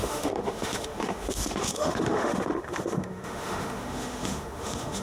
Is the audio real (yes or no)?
no